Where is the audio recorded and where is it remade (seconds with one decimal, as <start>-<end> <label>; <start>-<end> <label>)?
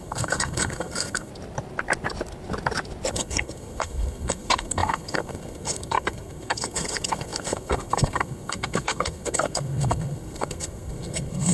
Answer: 0.0-1.3 remade; 1.3-3.1 recorded; 3.1-11.5 remade